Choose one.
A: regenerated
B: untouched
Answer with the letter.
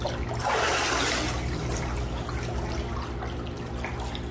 B